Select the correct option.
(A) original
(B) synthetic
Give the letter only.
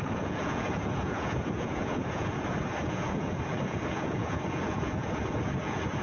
B